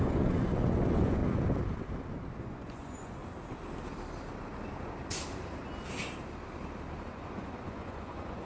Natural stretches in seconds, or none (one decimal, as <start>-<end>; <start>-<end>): 1.2-2.4; 3.2-7.1